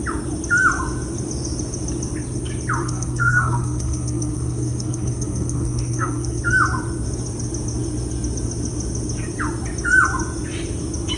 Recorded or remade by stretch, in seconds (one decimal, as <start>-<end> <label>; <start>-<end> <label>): 0.0-2.8 recorded; 2.8-6.4 remade; 6.4-11.2 recorded